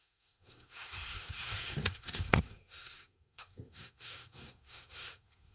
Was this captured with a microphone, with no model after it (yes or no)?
no